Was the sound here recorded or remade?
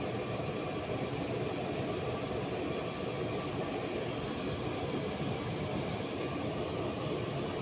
recorded